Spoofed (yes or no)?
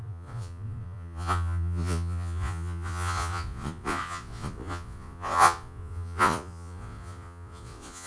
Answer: yes